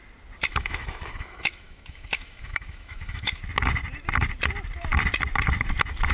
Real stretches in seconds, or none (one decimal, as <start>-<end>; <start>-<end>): 0.0-0.5; 3.4-6.1